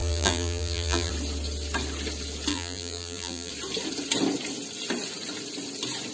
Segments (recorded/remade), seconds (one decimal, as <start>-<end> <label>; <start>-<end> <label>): 0.0-1.1 remade; 1.1-2.5 recorded; 2.5-3.5 remade; 3.5-6.1 recorded